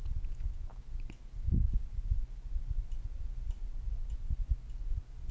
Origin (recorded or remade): recorded